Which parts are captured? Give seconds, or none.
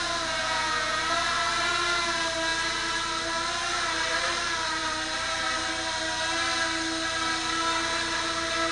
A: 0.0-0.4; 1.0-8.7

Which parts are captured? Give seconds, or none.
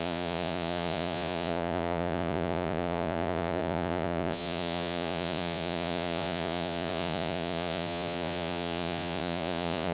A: none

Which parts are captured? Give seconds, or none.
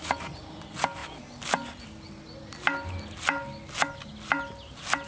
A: 0.0-5.1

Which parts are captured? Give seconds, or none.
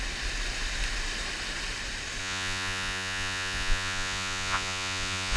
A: 0.0-2.2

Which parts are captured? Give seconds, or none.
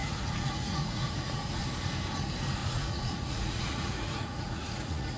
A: 1.6-2.6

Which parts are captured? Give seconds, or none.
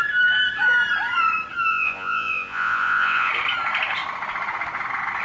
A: 0.0-1.7; 3.3-5.2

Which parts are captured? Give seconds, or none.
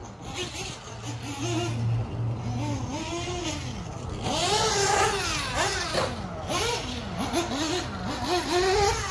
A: 0.0-9.1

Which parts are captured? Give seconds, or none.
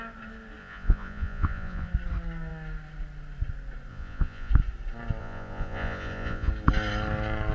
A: 0.0-0.6; 1.9-3.9; 4.5-5.2; 6.5-7.5